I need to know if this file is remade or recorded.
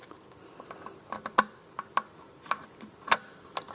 recorded